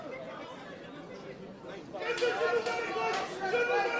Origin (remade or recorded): recorded